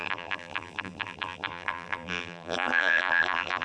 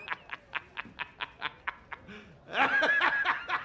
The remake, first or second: first